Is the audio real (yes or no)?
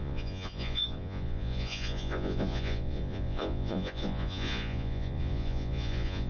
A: no